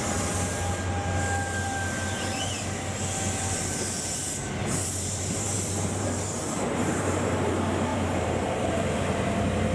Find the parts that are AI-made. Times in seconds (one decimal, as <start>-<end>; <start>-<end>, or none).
4.6-7.5; 7.9-9.0